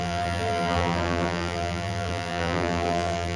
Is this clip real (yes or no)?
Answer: no